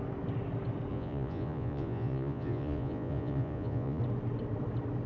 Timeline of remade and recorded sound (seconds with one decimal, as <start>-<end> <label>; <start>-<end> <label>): 0.0-0.9 recorded; 0.9-4.0 remade; 4.0-5.1 recorded